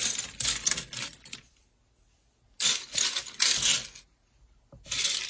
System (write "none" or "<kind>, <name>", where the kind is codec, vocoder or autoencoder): none